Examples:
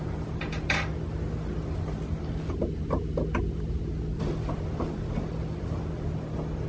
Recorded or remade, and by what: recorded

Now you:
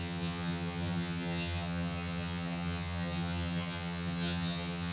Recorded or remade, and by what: remade, vocoder, HiFi-GAN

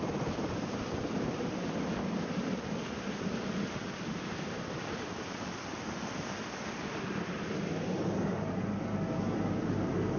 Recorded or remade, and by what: recorded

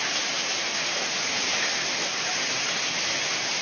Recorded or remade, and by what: recorded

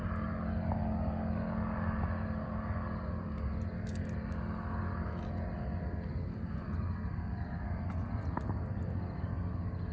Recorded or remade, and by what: recorded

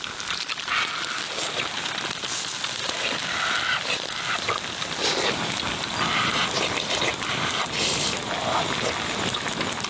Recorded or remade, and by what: recorded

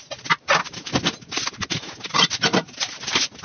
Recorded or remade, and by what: recorded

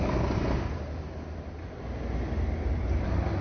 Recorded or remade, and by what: recorded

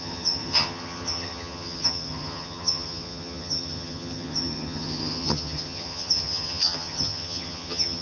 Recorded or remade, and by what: remade, vocoder, HiFi-GAN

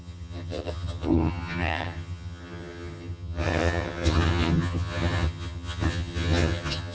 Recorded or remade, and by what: remade, vocoder, HiFi-GAN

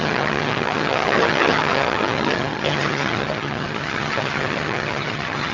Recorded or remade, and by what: remade, vocoder, HiFi-GAN